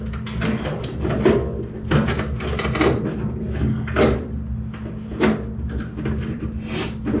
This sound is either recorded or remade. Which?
recorded